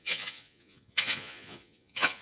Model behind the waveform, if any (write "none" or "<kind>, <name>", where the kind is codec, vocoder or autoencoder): vocoder, Vocos